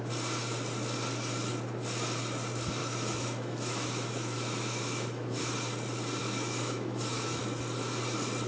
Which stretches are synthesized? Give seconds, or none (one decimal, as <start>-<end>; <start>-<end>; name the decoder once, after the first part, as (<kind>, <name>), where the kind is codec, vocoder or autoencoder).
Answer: 2.8-5.4 (autoencoder, DAC-VAE); 6.2-7.4